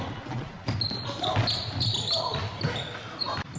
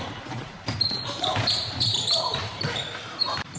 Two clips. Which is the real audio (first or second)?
first